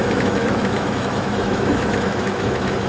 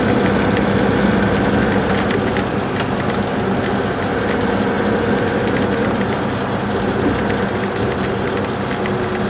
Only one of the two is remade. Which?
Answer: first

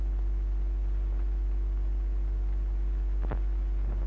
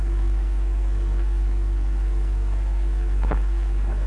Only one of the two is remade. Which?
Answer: second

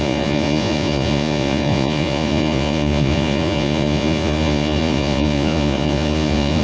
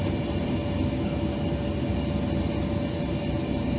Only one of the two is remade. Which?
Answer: first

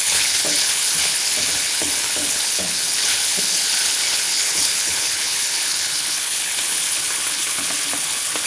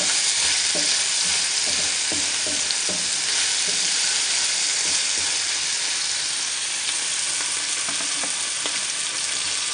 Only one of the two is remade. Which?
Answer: first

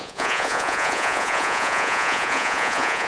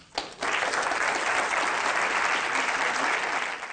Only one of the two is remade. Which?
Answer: first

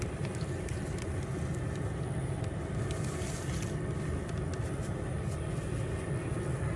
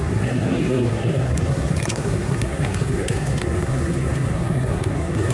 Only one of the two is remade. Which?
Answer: second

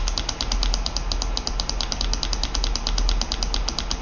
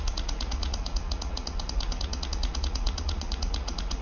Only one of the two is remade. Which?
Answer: second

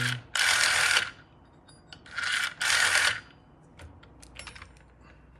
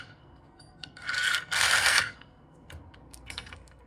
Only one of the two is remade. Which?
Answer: second